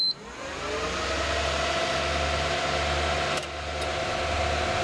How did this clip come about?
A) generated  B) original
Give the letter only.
B